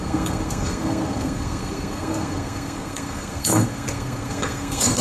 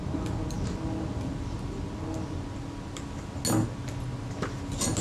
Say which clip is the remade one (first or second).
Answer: first